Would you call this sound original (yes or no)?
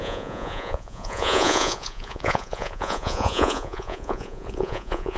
no